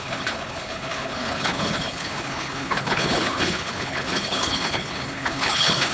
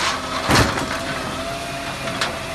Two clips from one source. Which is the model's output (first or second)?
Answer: first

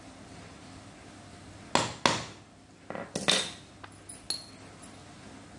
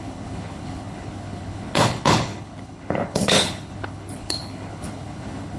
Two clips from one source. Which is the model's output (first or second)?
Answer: second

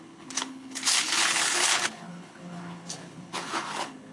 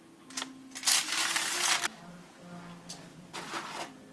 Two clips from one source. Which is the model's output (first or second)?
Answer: first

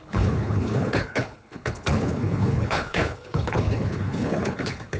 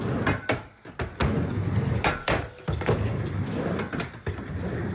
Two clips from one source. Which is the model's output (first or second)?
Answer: first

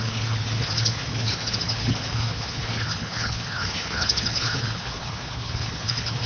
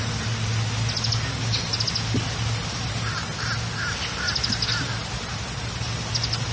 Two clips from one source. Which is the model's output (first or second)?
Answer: first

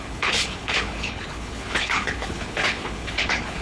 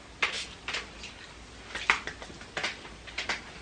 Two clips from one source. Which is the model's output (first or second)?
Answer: first